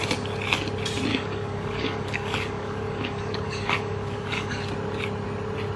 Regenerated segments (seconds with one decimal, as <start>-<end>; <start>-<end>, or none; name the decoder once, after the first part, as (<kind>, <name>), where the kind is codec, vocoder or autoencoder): 1.1-4.6 (codec, DAC)